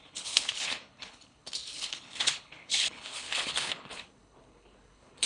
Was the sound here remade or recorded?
remade